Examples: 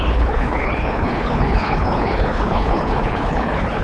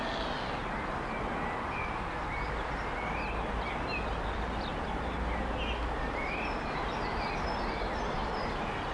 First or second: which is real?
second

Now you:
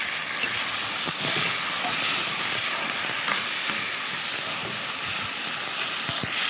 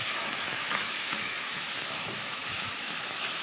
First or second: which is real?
first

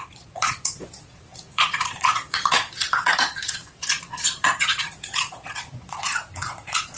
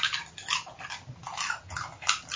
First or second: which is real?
second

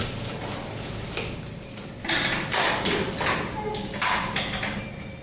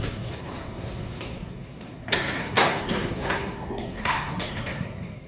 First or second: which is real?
first